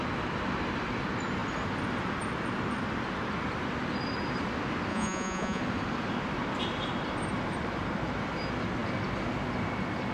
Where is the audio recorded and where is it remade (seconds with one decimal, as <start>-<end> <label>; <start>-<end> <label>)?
0.0-4.9 recorded; 4.9-5.6 remade; 5.6-10.1 recorded